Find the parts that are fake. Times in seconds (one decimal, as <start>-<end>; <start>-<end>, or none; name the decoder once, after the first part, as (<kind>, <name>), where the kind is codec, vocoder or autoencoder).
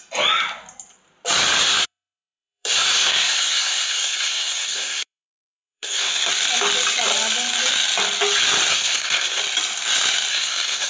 1.7-6.3 (codec, SNAC); 8.7-9.4; 10.3-10.9